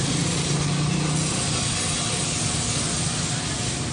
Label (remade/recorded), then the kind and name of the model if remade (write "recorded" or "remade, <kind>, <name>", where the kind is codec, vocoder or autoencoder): recorded